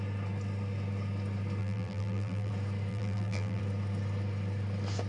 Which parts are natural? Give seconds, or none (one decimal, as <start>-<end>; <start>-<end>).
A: 0.0-1.6; 2.5-2.9; 3.6-5.1

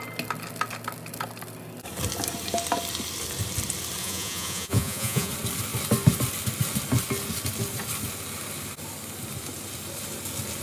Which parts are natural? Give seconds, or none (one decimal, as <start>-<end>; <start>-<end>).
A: 0.0-4.0; 5.3-10.6

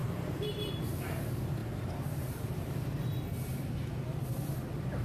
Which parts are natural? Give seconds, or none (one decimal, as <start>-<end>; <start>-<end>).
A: 0.9-5.0

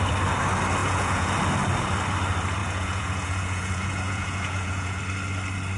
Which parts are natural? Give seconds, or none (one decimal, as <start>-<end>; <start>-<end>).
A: 0.0-0.8; 1.3-2.6; 5.0-5.8